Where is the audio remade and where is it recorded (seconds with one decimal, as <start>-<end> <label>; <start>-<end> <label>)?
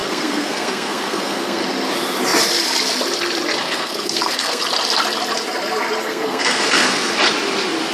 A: 0.0-1.6 remade; 1.6-3.6 recorded; 3.6-4.6 remade; 4.6-6.0 recorded; 6.0-7.1 remade; 7.1-7.9 recorded